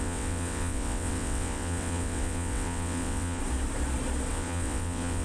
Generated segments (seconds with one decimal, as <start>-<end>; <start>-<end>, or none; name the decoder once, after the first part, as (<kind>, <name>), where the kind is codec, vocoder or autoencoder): 0.0-3.4 (vocoder, WaveNeXt); 4.3-5.2